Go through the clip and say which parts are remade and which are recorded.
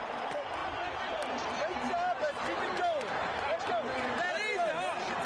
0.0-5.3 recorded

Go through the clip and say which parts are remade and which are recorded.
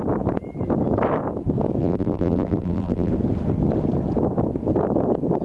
0.0-1.8 recorded; 1.8-3.1 remade; 3.1-5.4 recorded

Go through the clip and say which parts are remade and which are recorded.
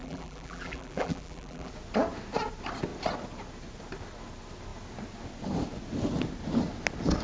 0.0-1.7 remade; 1.7-7.2 recorded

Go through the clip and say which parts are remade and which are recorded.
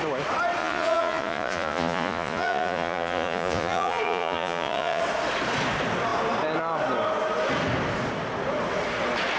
0.0-0.6 recorded; 0.6-5.0 remade; 5.0-9.4 recorded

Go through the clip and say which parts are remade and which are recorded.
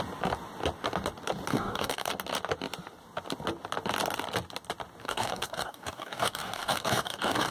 0.0-1.5 recorded; 1.5-2.1 remade; 2.1-5.0 recorded; 5.0-7.5 remade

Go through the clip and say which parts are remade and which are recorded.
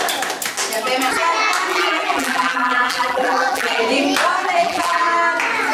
0.0-1.7 recorded; 1.7-3.8 remade; 3.8-4.4 recorded; 4.4-5.0 remade; 5.0-5.7 recorded